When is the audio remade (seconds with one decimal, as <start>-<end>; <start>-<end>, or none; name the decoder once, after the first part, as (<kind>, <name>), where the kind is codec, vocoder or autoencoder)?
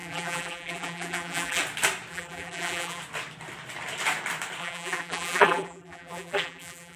0.0-1.6 (vocoder, BigVGAN v2); 2.1-3.0; 4.6-7.0